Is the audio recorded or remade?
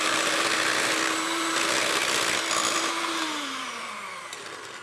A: remade